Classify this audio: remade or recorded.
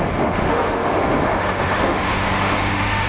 remade